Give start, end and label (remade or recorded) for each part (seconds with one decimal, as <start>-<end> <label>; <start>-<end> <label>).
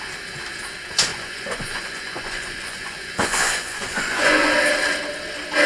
0.0-1.1 recorded; 1.1-4.5 remade; 4.5-5.7 recorded